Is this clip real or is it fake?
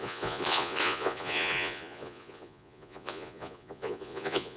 fake